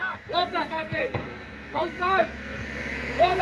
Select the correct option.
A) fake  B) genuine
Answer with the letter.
A